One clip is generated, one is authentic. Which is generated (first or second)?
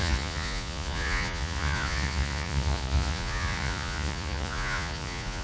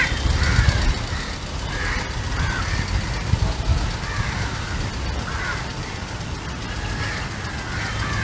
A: first